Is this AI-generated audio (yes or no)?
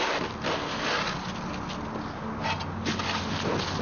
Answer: no